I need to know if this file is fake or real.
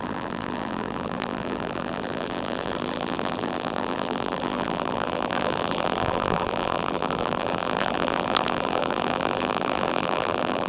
fake